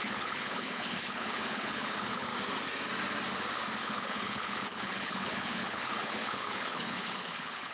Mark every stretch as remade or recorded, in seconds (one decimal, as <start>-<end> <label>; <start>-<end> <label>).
0.0-2.3 remade; 2.3-3.8 recorded; 3.8-7.7 remade